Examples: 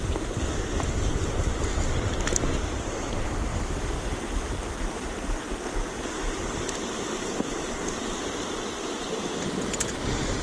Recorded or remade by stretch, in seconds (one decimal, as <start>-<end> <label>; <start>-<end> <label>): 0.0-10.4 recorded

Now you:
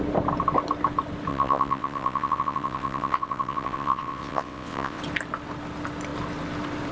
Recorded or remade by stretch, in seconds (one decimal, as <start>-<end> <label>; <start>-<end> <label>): 0.0-1.3 recorded; 1.3-5.0 remade; 5.0-6.9 recorded

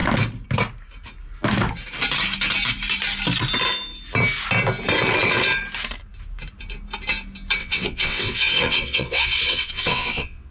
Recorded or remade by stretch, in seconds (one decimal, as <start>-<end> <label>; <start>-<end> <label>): 0.0-7.6 recorded; 7.6-10.5 remade

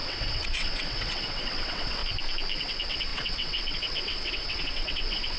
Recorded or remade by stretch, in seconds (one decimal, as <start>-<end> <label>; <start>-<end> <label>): 0.0-2.0 remade; 2.0-2.6 recorded; 2.6-5.4 remade